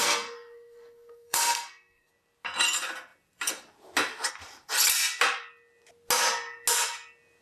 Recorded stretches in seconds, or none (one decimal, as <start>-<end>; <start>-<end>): 2.1-7.4